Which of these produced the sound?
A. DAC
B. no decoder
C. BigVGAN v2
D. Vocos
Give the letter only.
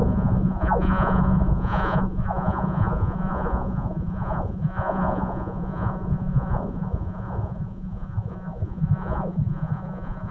D